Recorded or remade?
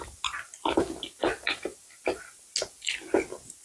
recorded